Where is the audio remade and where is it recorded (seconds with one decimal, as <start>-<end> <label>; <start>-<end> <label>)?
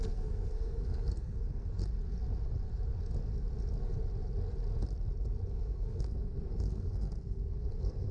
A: 0.0-1.8 remade; 1.8-5.5 recorded; 5.5-8.1 remade